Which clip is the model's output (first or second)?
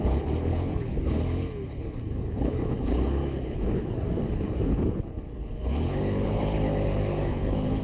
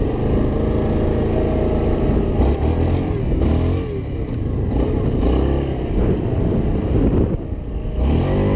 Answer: first